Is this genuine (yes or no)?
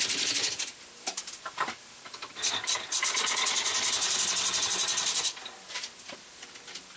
yes